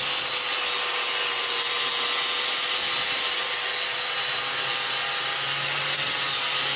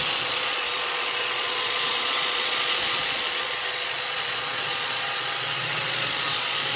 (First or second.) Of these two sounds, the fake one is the second